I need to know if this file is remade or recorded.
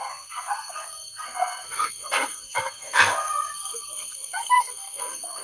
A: remade